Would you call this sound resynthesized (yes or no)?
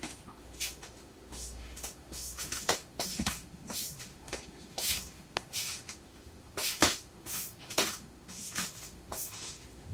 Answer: yes